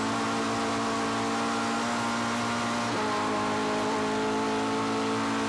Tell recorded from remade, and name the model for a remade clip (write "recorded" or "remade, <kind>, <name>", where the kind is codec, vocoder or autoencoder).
recorded